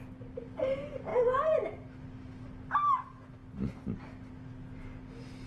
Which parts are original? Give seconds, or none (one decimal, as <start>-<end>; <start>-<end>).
0.0-5.5